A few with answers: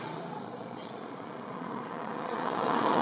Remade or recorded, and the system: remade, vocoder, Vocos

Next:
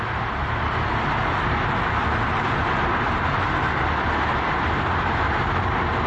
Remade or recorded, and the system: remade, vocoder, BigVGAN v2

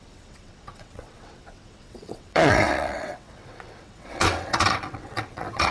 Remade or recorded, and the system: remade, vocoder, WaveNeXt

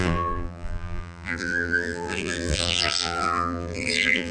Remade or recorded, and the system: remade, vocoder, BigVGAN v2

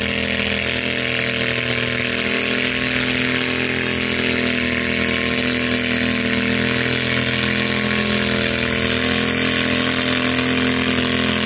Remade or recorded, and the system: recorded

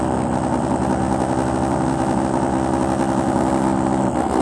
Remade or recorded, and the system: recorded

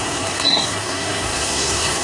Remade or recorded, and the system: remade, codec, SNAC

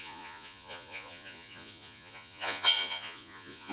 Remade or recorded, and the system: remade, vocoder, Vocos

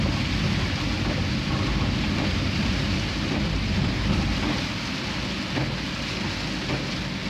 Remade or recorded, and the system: recorded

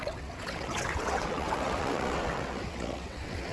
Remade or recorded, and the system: remade, vocoder, WaveNeXt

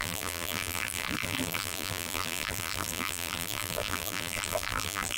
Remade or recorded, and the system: remade, vocoder, BigVGAN v2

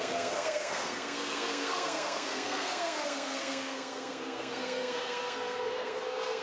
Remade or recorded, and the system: remade, codec, SNAC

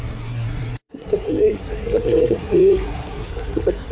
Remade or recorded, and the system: remade, codec, SNAC